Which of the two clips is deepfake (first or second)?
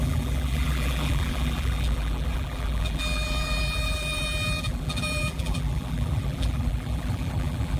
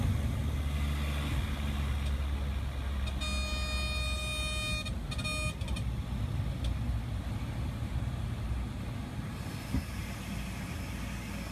first